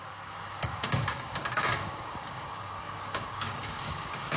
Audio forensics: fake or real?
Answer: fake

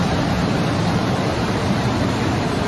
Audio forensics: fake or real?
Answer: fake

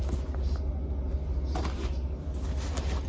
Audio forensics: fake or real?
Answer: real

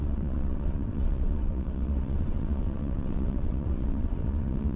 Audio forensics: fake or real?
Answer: fake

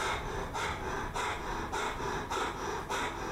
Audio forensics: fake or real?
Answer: real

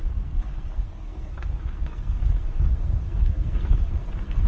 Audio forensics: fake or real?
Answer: fake